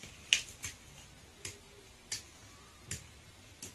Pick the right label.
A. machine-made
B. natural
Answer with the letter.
B